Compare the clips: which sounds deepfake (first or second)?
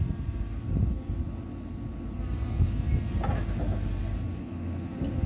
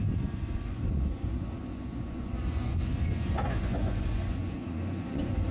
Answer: second